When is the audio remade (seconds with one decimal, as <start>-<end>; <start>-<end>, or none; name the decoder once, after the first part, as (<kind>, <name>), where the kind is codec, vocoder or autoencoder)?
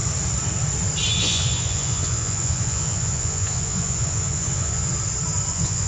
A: 1.2-4.9 (vocoder, Vocos); 5.5-5.9